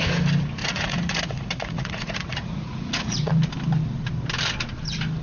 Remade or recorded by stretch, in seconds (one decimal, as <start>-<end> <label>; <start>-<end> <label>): 0.0-0.6 recorded; 0.6-3.3 remade; 3.3-5.2 recorded